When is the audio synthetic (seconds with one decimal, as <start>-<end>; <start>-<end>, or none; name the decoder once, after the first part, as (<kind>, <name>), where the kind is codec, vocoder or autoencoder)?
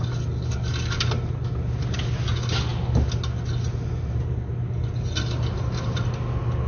none